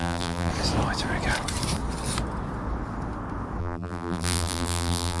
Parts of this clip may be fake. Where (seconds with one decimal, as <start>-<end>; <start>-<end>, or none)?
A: 0.0-0.5; 3.6-5.2